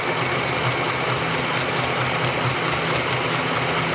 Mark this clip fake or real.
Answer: real